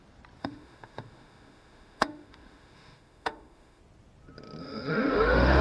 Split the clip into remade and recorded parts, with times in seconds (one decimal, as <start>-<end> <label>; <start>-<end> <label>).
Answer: 0.0-0.4 recorded; 0.4-3.8 remade; 3.8-4.6 recorded; 4.6-5.6 remade